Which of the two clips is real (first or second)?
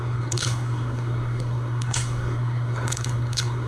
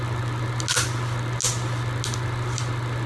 second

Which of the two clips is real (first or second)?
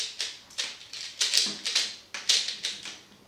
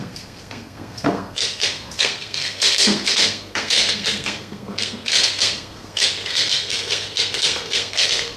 first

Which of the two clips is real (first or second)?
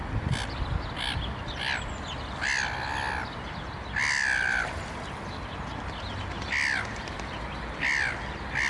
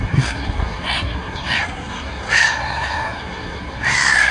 first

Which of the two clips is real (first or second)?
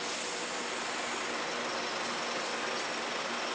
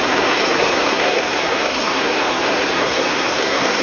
first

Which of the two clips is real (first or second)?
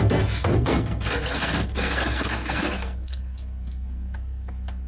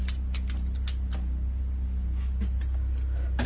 second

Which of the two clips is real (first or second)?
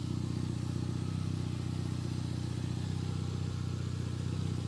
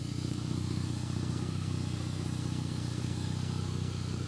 first